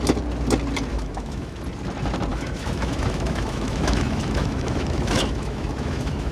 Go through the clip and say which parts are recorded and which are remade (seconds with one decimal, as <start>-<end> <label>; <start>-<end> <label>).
0.0-0.9 recorded; 0.9-1.6 remade; 1.6-2.3 recorded; 2.3-6.3 remade